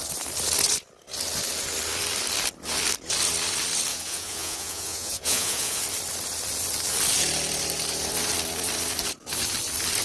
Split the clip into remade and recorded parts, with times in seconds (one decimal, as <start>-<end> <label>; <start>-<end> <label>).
0.0-3.9 recorded; 3.9-5.8 remade; 5.8-10.0 recorded

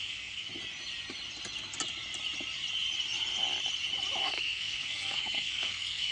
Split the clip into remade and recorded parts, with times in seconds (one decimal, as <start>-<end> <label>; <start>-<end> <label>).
0.0-0.5 remade; 0.5-4.2 recorded; 4.2-6.1 remade

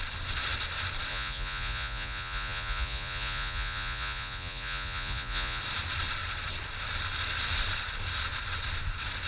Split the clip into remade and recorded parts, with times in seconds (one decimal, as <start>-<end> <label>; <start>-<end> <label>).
0.0-1.1 recorded; 1.1-5.6 remade; 5.6-9.3 recorded